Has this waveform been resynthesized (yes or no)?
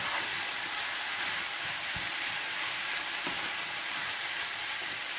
yes